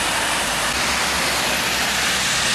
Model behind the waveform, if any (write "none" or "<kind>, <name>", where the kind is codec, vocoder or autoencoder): none